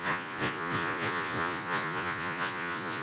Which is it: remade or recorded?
remade